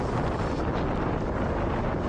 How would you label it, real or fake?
real